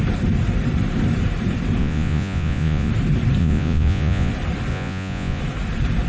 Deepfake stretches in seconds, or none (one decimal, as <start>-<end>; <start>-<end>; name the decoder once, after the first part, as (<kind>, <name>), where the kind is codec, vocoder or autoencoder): 1.8-2.9 (vocoder, Vocos); 3.4-4.3; 4.7-5.4